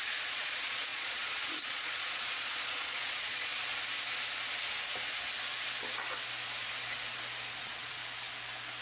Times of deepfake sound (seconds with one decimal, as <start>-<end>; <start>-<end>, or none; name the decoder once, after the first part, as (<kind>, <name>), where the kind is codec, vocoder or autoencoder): 0.0-3.5 (vocoder, Vocos); 7.6-8.0